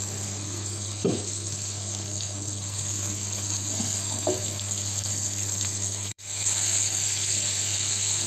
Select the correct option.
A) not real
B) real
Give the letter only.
A